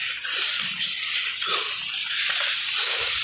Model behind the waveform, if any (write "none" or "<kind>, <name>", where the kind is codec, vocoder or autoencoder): none